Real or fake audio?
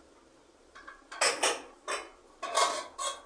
real